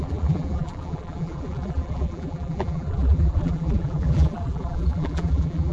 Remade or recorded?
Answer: remade